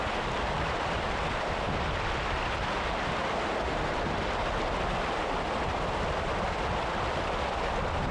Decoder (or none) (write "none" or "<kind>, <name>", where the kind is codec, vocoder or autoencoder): none